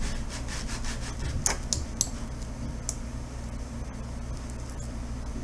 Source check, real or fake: real